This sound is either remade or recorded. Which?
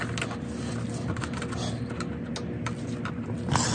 recorded